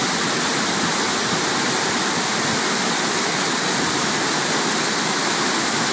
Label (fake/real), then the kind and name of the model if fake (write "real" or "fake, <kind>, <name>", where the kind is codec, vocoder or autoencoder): real